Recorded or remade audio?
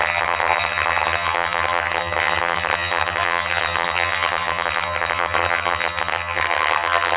remade